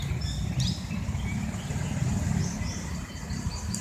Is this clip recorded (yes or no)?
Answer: yes